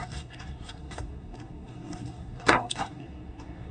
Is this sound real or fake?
fake